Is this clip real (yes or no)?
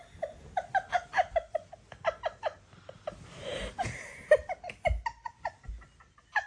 yes